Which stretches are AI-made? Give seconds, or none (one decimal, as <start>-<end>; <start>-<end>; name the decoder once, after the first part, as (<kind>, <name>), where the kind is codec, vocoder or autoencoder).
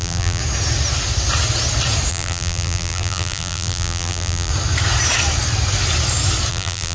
0.0-0.4 (vocoder, BigVGAN v2); 2.1-4.5; 6.5-6.9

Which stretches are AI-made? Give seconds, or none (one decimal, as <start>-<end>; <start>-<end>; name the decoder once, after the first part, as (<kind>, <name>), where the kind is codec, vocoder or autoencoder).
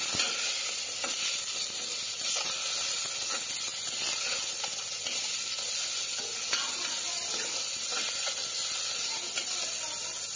none